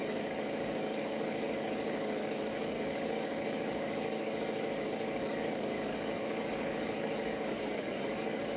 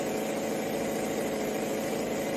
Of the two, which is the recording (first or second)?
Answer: second